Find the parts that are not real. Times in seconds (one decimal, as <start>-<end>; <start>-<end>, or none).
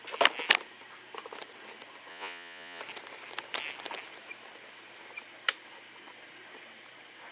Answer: 2.1-2.8